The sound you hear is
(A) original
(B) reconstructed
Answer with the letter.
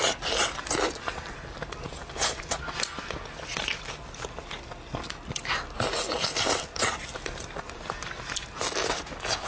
A